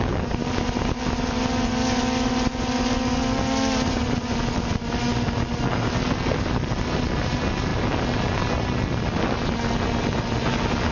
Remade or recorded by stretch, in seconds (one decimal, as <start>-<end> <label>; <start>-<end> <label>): 0.0-10.9 recorded